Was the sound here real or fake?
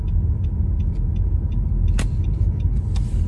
real